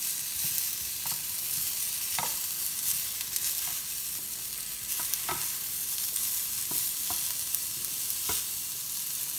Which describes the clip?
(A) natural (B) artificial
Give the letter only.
A